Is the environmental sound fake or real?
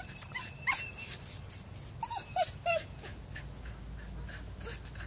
real